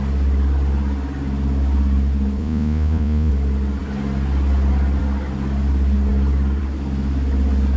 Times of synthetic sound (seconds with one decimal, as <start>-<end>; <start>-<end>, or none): 2.4-3.3